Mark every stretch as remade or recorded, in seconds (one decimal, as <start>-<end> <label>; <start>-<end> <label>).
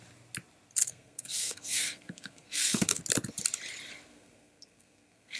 0.0-0.8 recorded; 0.8-3.0 remade; 3.0-4.1 recorded; 4.1-5.4 remade